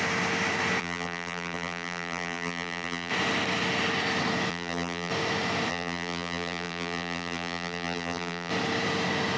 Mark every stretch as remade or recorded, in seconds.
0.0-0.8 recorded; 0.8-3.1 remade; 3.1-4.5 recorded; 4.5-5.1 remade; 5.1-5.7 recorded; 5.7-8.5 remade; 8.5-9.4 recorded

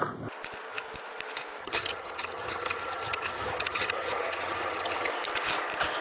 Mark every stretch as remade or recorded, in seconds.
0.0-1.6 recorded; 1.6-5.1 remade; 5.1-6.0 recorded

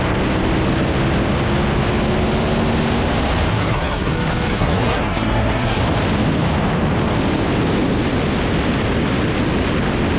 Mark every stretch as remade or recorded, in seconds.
0.0-3.5 recorded; 3.5-4.1 remade; 4.1-4.5 recorded; 4.5-5.8 remade; 5.8-10.2 recorded

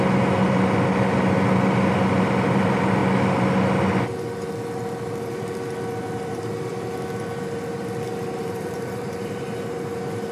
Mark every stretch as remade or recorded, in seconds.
0.0-8.4 recorded; 8.4-10.3 remade